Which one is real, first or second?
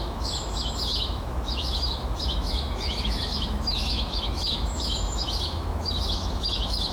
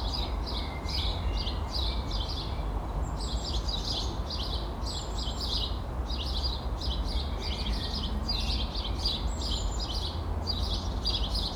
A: second